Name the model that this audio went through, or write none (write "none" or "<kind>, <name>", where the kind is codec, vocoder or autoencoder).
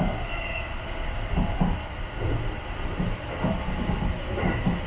none